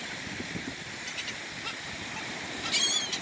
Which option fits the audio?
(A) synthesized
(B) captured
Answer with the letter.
B